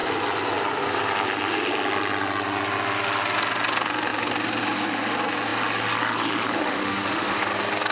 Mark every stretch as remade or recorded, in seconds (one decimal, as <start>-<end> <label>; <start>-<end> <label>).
0.0-6.6 recorded; 6.6-7.4 remade; 7.4-7.9 recorded